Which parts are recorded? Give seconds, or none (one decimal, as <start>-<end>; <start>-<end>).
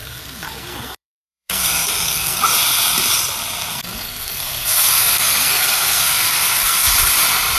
2.4-3.7; 6.9-7.6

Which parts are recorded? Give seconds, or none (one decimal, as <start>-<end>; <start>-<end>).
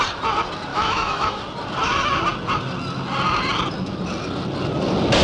0.0-0.7; 1.4-5.2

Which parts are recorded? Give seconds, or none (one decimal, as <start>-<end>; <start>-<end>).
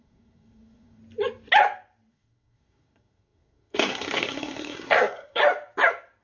1.0-2.1; 5.4-6.2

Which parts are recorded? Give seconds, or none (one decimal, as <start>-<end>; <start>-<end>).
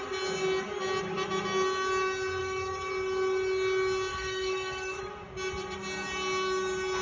0.0-2.4; 2.9-4.1; 5.1-7.0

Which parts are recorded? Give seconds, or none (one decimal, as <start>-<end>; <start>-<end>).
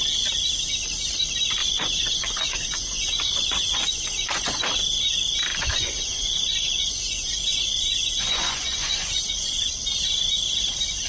0.0-1.6; 4.6-5.5; 9.7-11.1